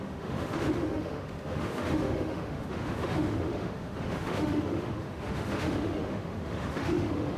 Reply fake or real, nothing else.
fake